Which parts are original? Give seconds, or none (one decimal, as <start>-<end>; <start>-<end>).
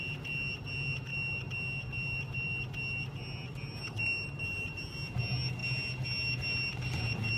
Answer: 0.0-7.4